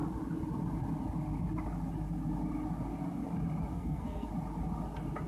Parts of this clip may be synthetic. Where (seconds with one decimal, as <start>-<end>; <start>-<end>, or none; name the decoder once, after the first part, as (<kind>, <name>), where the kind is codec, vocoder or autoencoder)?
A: 3.7-4.3 (codec, SNAC)